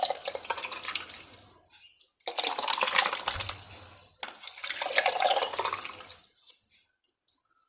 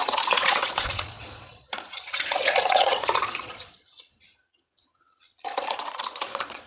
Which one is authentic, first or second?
first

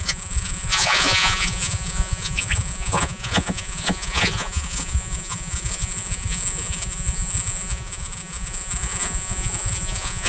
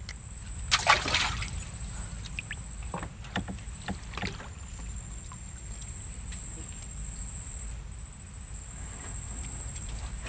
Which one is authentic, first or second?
second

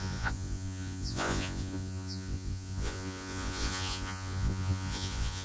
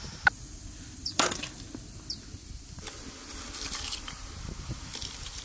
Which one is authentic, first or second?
second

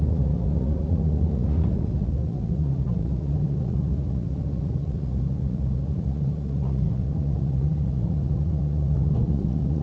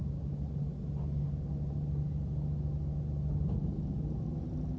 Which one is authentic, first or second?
second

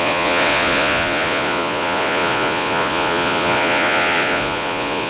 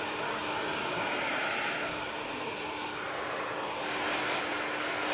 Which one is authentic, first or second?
second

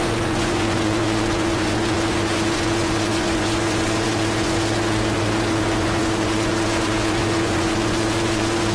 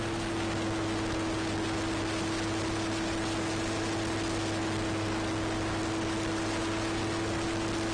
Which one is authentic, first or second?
second